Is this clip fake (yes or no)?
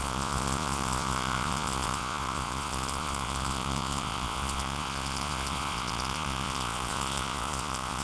yes